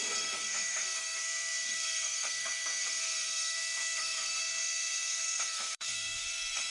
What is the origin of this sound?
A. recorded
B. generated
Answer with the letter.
B